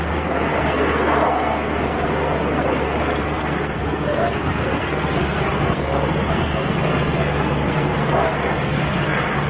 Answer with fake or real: fake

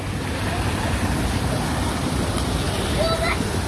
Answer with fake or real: real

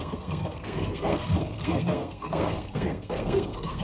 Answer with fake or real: fake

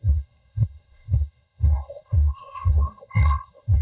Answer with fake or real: fake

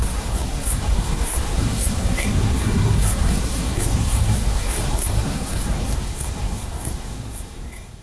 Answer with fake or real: fake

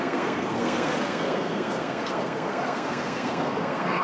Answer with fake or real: fake